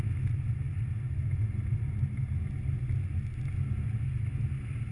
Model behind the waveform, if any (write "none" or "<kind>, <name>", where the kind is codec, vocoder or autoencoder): none